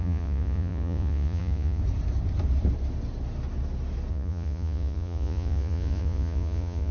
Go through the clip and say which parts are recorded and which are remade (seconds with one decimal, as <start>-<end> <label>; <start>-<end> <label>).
0.0-1.8 remade; 1.8-4.1 recorded; 4.1-6.9 remade